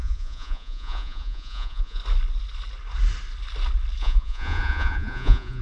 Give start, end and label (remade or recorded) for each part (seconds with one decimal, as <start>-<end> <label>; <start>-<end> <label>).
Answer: 0.0-2.0 remade; 2.0-4.0 recorded; 4.0-5.6 remade